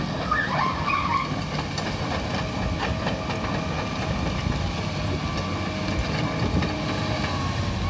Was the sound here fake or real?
real